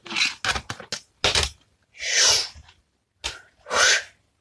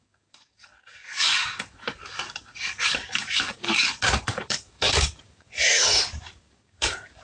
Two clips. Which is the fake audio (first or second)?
second